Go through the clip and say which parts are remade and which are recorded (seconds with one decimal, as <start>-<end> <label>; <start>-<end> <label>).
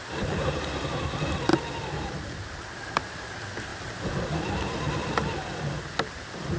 0.0-6.6 recorded